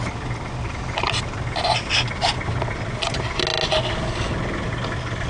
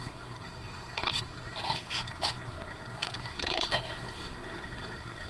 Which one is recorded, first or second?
first